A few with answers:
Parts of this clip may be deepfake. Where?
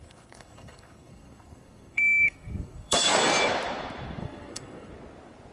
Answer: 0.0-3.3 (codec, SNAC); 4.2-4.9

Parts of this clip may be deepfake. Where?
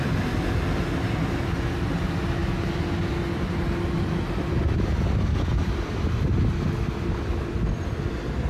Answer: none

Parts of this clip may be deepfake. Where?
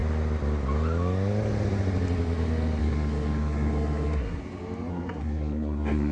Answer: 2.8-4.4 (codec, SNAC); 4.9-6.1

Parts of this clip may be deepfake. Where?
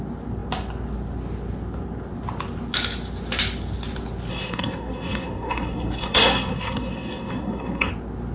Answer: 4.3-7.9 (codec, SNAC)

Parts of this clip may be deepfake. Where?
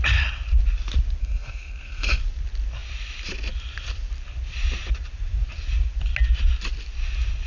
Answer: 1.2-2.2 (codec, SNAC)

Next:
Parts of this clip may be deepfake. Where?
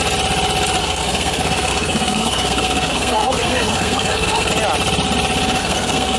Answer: 0.8-4.5 (codec, SNAC); 5.6-6.2